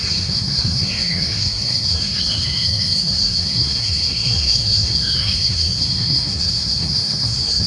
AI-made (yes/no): yes